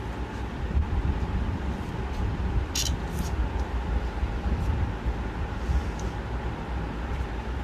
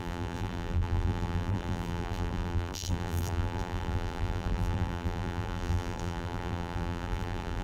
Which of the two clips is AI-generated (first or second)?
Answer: second